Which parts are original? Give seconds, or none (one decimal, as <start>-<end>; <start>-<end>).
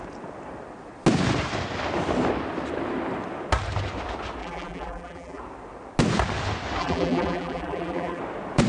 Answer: 0.0-4.4; 5.4-6.8; 8.2-8.7